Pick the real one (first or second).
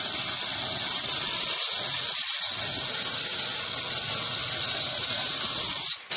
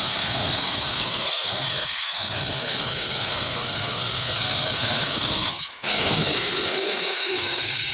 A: first